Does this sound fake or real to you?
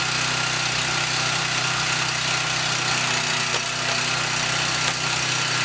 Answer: real